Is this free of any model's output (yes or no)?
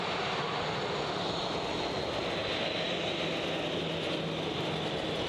yes